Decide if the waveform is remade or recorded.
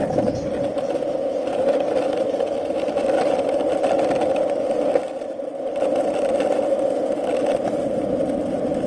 recorded